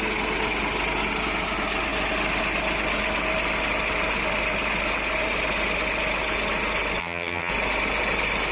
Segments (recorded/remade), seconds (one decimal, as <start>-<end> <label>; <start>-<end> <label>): 0.0-7.0 recorded; 7.0-7.5 remade; 7.5-8.5 recorded